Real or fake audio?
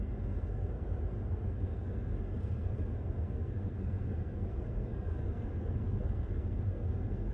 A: fake